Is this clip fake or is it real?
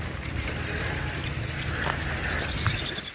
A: real